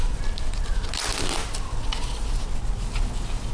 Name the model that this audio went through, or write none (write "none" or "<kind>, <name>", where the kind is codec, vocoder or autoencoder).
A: none